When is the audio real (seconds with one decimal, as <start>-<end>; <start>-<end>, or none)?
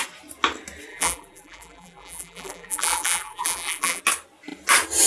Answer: 0.0-0.9; 4.0-5.1